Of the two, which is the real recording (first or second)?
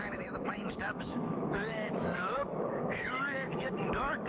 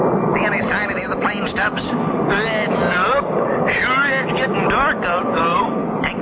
second